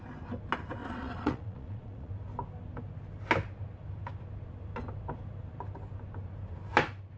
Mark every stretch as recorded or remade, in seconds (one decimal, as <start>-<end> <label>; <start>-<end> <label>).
0.0-0.8 recorded; 0.8-2.1 remade; 2.1-7.2 recorded